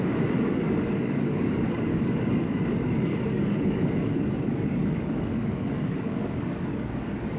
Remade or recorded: remade